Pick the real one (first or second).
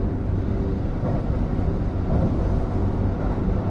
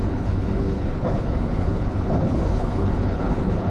first